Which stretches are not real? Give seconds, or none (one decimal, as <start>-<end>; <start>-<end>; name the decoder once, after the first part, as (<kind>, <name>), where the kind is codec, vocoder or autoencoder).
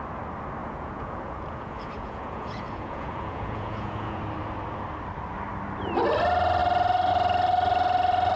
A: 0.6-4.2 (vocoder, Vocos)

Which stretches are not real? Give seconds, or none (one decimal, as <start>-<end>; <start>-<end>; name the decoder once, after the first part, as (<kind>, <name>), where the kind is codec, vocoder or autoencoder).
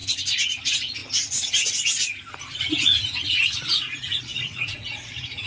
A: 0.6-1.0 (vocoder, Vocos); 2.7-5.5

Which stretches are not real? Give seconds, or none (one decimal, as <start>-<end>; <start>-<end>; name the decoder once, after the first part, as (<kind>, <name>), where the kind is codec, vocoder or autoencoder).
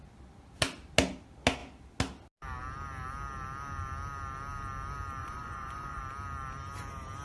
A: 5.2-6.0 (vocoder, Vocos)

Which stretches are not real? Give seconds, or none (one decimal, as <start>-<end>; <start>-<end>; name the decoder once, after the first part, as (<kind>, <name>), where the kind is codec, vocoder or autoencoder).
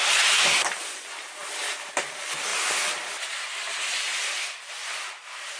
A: none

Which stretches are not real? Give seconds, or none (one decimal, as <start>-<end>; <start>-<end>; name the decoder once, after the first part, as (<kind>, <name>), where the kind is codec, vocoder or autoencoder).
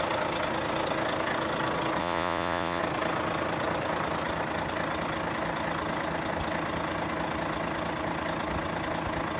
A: 2.0-2.8 (vocoder, Vocos)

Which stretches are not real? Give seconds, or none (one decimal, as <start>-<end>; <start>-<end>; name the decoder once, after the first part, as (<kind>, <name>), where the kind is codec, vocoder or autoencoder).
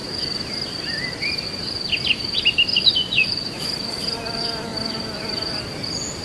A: 2.7-3.6 (vocoder, Vocos)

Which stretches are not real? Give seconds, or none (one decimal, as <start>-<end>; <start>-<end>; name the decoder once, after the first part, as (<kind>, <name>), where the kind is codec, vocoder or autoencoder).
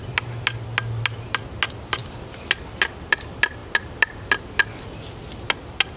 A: none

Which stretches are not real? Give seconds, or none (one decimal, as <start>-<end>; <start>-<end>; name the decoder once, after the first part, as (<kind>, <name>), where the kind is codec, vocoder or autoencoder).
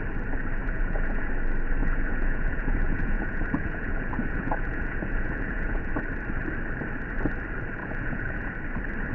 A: 0.6-1.3 (vocoder, Vocos); 1.8-5.9; 7.8-8.5